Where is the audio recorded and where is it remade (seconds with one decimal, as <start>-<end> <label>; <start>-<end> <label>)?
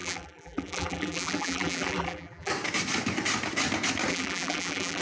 0.0-2.5 remade; 2.5-4.1 recorded; 4.1-5.0 remade